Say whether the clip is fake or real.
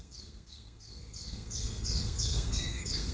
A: fake